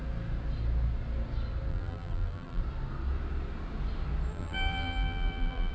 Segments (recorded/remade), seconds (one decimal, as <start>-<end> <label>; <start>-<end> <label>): 0.0-1.7 recorded; 1.7-2.6 remade; 2.6-4.3 recorded; 4.3-5.7 remade